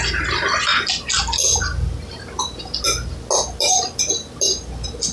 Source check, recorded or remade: recorded